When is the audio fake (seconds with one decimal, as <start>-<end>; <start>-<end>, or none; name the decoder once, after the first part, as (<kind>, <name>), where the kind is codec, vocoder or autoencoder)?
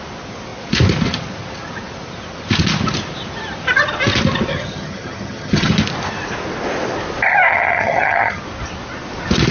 4.5-5.7 (vocoder, HiFi-GAN); 7.5-8.4